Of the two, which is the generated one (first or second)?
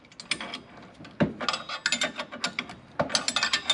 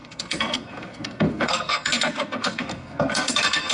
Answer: second